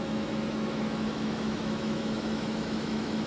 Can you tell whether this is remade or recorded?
remade